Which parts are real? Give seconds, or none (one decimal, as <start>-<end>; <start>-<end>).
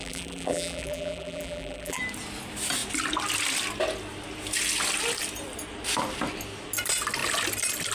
2.0-7.9